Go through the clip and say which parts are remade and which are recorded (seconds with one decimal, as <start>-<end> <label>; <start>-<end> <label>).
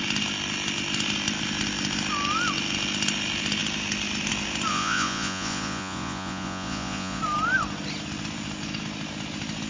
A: 0.0-4.7 recorded; 4.7-7.2 remade; 7.2-9.7 recorded